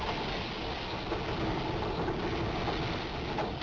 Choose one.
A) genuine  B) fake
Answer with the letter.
A